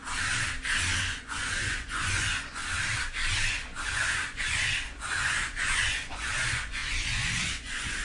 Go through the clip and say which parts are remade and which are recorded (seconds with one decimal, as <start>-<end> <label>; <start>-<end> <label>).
0.0-1.0 recorded; 1.0-2.6 remade; 2.6-3.5 recorded; 3.5-8.0 remade